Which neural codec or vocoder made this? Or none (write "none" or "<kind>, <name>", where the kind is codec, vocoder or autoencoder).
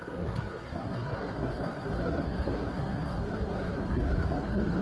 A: codec, SNAC